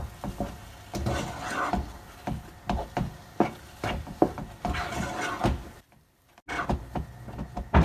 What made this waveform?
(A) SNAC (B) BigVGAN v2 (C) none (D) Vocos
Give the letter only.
C